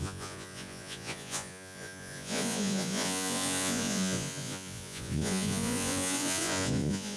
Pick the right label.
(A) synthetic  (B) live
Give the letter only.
A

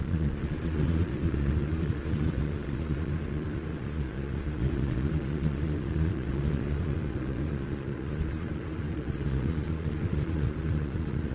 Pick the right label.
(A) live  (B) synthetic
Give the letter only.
B